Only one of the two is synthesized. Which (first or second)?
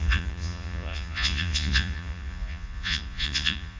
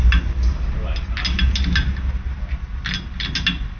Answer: first